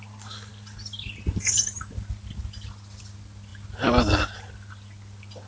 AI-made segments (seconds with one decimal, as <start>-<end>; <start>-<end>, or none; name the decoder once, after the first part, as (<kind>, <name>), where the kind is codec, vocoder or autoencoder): none